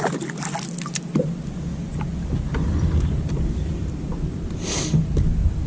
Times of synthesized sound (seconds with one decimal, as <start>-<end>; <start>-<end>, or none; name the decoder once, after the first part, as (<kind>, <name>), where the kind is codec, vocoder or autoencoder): none